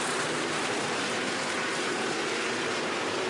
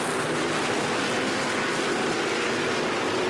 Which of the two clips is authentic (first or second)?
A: second